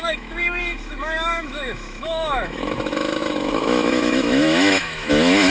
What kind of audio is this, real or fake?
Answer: fake